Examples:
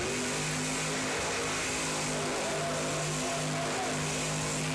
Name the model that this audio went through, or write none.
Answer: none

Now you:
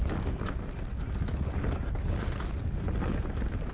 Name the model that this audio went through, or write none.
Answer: none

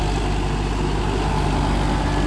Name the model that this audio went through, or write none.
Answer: none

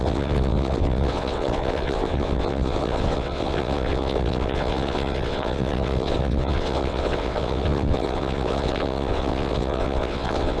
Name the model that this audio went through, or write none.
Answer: vocoder, WaveNeXt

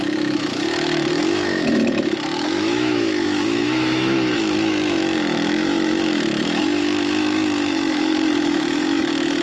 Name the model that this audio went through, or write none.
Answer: autoencoder, DAC-VAE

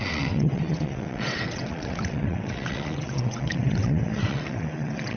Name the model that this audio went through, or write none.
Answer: vocoder, WaveNeXt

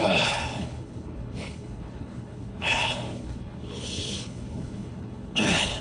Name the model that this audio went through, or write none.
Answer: codec, HILCodec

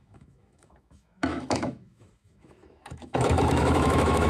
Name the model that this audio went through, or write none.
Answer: autoencoder, DAC-VAE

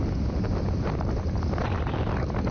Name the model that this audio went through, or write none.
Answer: none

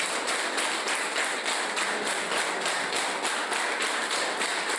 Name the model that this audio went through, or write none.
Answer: none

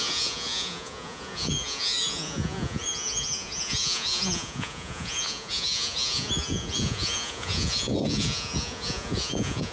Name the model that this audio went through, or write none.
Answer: vocoder, Vocos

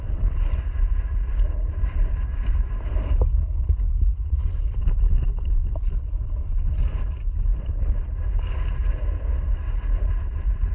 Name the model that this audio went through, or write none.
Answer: vocoder, BigVGAN v2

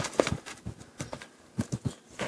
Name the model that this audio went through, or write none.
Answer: none